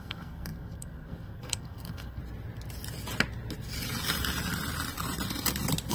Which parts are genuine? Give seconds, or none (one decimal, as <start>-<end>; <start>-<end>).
2.2-5.9